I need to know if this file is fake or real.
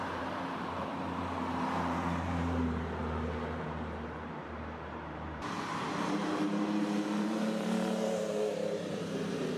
fake